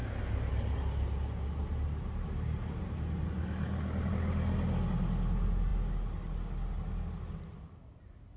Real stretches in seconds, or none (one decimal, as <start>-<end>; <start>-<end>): 0.0-8.4